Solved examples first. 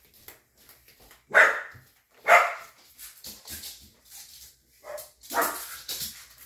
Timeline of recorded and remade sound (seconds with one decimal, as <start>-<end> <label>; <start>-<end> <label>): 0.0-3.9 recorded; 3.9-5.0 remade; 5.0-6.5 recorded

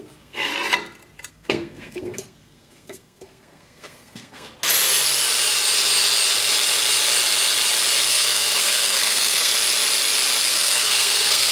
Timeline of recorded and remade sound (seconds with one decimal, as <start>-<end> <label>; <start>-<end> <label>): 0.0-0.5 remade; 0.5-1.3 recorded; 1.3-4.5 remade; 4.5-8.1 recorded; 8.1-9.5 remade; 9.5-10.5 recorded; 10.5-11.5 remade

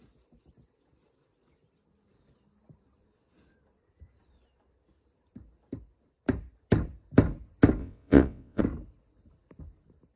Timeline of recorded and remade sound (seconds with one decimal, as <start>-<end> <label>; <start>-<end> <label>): 0.0-7.8 recorded; 7.8-8.6 remade; 8.6-10.2 recorded